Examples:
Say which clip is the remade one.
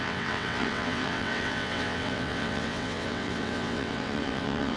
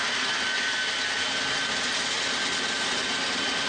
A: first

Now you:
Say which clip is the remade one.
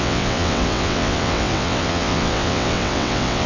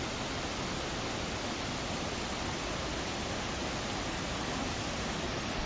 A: first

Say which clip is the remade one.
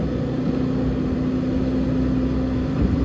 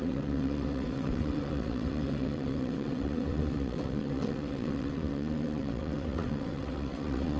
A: second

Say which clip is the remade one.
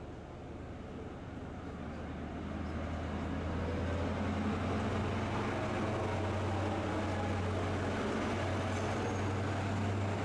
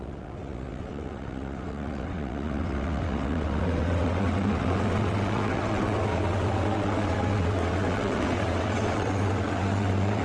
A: second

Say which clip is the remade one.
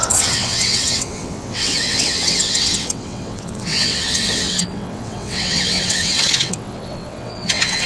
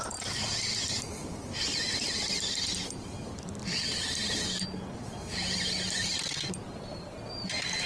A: first